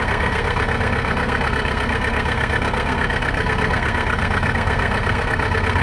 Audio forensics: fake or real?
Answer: fake